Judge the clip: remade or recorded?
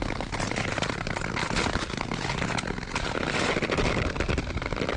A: recorded